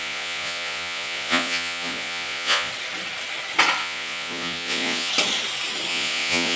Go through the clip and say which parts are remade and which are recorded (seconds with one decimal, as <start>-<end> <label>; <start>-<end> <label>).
0.0-2.7 remade; 2.7-3.8 recorded; 3.8-5.1 remade; 5.1-5.9 recorded; 5.9-6.6 remade